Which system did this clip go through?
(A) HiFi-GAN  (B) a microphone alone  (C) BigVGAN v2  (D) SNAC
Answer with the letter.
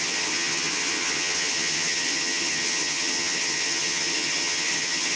A